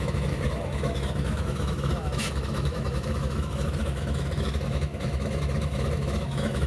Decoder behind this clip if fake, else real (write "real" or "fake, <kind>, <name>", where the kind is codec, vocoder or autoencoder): fake, autoencoder, DAC-VAE